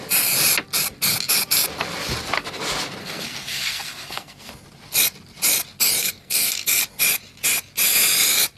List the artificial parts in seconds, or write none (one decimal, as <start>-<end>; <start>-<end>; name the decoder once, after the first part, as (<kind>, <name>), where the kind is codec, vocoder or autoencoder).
3.0-4.5 (codec, SNAC); 6.0-6.8